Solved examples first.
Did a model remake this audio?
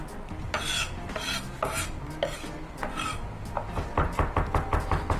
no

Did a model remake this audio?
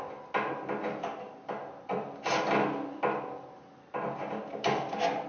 no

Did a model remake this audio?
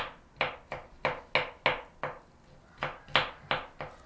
no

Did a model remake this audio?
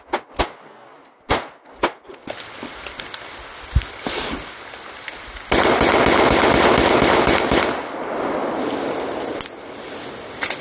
no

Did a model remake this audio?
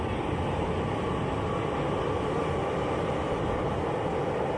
no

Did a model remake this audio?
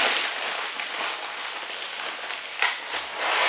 no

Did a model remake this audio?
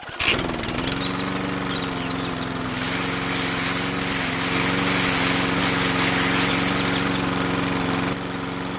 no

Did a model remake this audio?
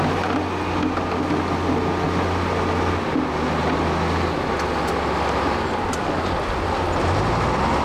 no